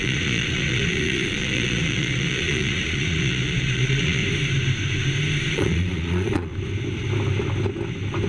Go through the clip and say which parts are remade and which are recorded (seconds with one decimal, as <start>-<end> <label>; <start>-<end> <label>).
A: 0.0-4.2 remade; 4.2-5.5 recorded; 5.5-6.5 remade; 6.5-8.3 recorded